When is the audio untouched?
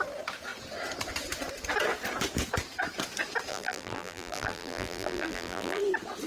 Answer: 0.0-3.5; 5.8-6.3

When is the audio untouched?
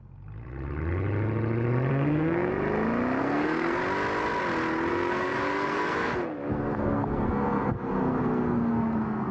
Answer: 0.0-1.9; 2.5-3.2; 3.8-4.9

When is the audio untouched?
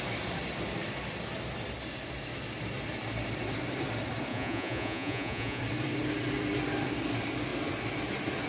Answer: 0.0-4.3; 5.6-8.5